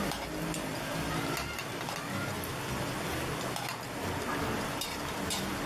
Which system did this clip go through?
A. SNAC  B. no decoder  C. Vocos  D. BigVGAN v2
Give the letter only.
B